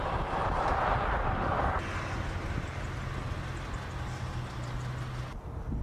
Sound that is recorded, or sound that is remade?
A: recorded